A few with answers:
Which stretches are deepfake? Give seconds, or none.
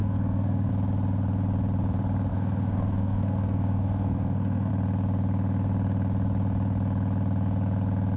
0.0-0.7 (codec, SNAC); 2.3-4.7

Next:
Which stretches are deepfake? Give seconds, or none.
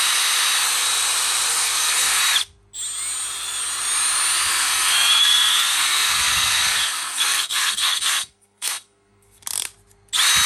1.5-2.2 (codec, SNAC); 4.5-9.4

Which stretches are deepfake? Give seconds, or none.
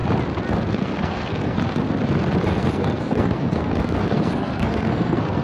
0.7-1.6 (codec, SNAC); 2.5-5.4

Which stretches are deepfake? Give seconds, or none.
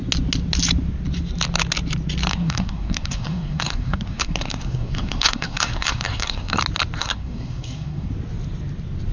2.3-6.6 (codec, SNAC); 7.0-8.1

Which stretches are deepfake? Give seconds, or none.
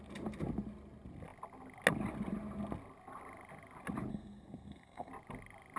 4.1-5.1 (codec, SNAC)